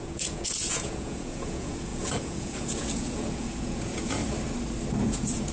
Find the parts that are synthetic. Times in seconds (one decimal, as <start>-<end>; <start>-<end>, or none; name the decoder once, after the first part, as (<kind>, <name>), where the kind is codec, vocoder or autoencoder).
0.0-4.2 (vocoder, Vocos); 5.0-5.5